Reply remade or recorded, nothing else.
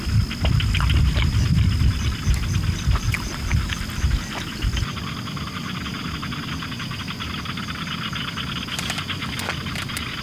recorded